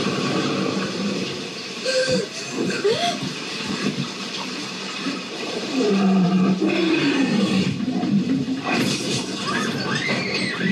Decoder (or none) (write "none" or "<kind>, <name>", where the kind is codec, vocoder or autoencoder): vocoder, BigVGAN v2